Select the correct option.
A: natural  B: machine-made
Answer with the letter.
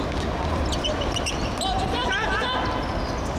A